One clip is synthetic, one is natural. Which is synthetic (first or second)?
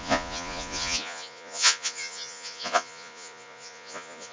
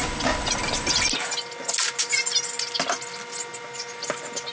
first